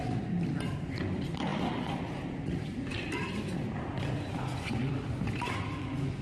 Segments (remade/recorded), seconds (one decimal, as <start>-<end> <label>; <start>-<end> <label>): 0.0-6.2 recorded